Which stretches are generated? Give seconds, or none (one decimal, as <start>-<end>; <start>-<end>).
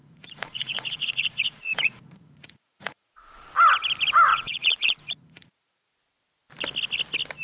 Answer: 0.0-3.5; 4.3-5.9